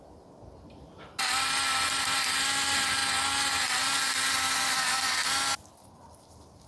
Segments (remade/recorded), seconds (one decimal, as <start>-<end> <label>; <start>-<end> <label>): 0.0-6.7 recorded